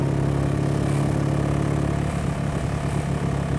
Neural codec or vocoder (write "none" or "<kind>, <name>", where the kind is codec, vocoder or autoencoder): none